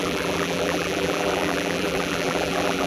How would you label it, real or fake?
fake